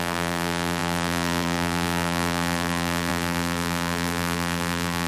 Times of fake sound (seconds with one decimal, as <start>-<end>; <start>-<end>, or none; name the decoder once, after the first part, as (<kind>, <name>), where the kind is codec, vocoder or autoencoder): 0.0-5.1 (vocoder, BigVGAN v2)